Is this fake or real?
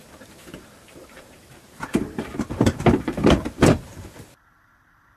fake